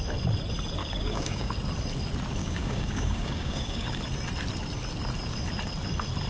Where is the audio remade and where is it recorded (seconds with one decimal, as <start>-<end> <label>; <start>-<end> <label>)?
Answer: 0.0-0.8 recorded; 0.8-1.5 remade; 1.5-2.4 recorded; 2.4-4.0 remade; 4.0-6.3 recorded